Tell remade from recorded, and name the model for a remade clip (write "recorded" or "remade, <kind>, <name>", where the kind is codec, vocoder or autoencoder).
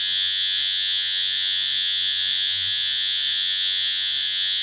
remade, vocoder, Vocos